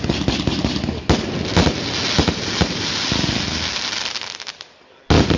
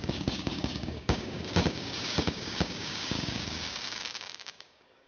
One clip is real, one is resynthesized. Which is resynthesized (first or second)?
second